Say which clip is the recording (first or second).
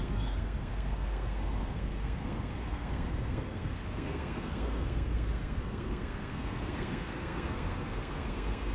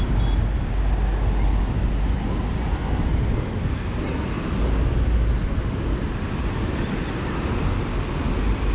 second